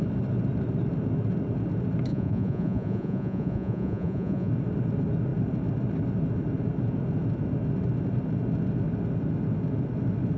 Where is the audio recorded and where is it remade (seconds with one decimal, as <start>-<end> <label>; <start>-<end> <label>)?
0.0-2.1 recorded; 2.1-4.5 remade; 4.5-10.4 recorded